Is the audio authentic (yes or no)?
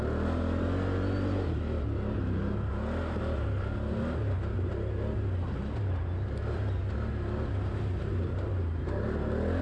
yes